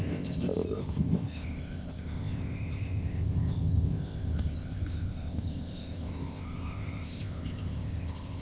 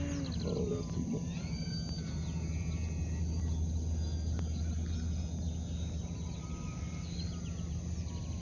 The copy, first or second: first